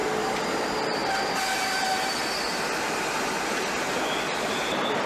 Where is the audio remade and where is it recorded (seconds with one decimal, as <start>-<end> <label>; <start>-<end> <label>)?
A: 0.0-5.1 recorded